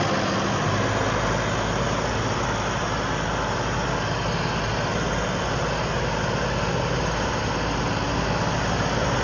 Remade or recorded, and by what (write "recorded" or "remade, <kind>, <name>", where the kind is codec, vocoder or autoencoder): recorded